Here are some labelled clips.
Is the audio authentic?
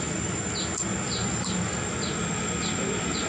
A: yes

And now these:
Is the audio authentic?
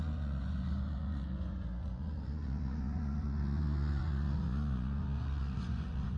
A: no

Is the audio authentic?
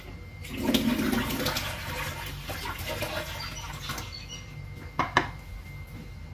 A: yes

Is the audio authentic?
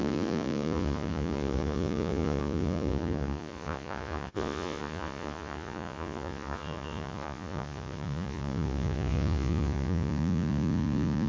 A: no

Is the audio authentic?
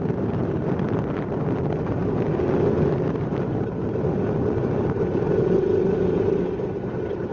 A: yes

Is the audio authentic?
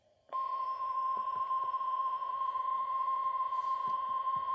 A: no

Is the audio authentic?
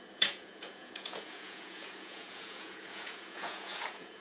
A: no